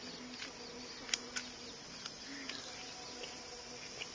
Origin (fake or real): real